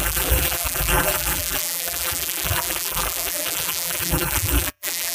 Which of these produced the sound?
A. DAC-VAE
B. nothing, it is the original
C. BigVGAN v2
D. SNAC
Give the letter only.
C